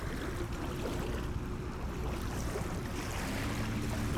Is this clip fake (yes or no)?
no